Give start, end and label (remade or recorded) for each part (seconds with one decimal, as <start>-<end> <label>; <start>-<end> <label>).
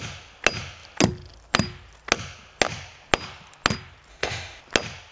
0.0-4.1 recorded; 4.1-4.6 remade; 4.6-5.1 recorded